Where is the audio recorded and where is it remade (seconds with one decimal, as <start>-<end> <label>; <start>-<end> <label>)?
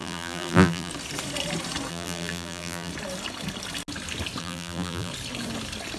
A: 0.0-0.9 remade; 0.9-1.9 recorded; 1.9-2.9 remade; 2.9-4.4 recorded; 4.4-5.1 remade; 5.1-6.0 recorded